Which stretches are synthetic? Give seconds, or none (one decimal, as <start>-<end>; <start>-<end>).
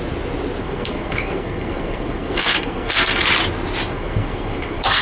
0.6-3.2; 3.9-5.0